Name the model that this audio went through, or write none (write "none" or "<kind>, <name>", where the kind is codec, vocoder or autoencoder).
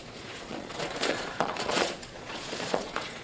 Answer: vocoder, Vocos